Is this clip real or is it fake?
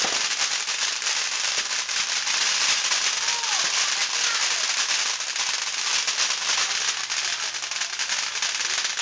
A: real